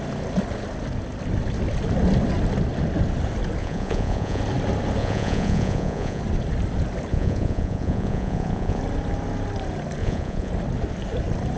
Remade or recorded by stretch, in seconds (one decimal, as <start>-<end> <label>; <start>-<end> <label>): 0.0-3.6 recorded; 3.6-4.4 remade; 4.4-5.0 recorded; 5.0-6.2 remade; 6.2-7.1 recorded; 7.1-8.8 remade; 8.8-10.0 recorded; 10.0-10.5 remade; 10.5-11.6 recorded